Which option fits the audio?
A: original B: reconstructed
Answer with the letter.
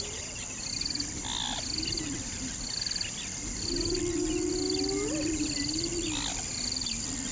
A